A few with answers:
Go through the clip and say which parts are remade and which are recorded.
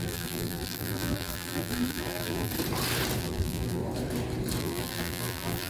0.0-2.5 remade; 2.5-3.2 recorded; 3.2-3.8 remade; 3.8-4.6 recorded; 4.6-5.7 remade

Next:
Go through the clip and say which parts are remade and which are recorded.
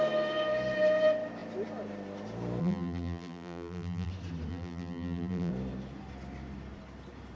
0.0-2.6 recorded; 2.6-4.1 remade; 4.1-4.5 recorded; 4.5-5.5 remade; 5.5-7.4 recorded